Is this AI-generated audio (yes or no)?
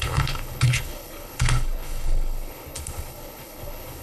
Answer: yes